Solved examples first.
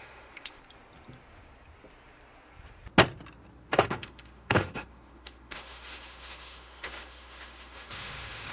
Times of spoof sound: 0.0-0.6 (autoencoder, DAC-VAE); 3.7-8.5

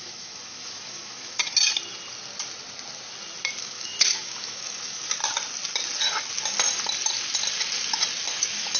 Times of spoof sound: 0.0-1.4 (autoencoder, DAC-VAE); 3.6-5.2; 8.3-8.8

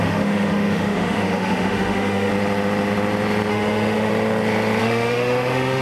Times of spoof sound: 0.0-2.3 (autoencoder, DAC-VAE); 3.5-4.1; 4.8-5.8